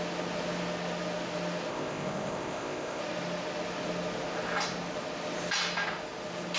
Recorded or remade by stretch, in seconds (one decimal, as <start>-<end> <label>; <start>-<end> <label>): 0.0-1.7 recorded; 1.7-3.0 remade; 3.0-6.6 recorded